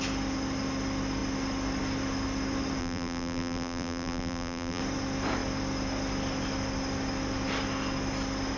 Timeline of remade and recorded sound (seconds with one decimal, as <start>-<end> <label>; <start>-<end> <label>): 0.0-2.8 recorded; 2.8-4.8 remade; 4.8-8.6 recorded